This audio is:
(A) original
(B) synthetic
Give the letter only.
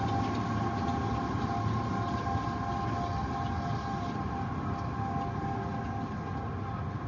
A